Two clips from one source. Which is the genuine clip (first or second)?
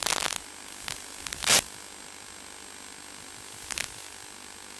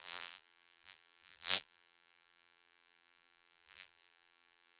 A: first